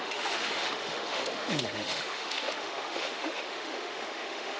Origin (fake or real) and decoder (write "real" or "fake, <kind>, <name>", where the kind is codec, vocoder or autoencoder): fake, autoencoder, DAC-VAE